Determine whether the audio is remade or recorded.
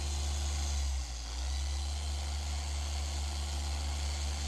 recorded